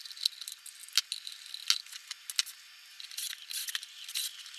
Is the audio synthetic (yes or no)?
no